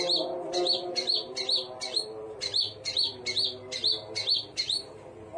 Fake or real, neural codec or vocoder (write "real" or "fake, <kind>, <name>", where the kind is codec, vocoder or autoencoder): real